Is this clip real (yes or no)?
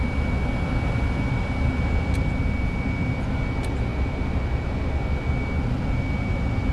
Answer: yes